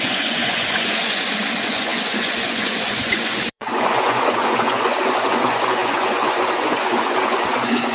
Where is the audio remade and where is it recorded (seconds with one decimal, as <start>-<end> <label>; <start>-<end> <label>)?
0.0-7.9 remade